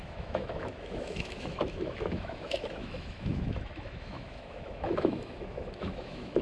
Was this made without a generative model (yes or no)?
no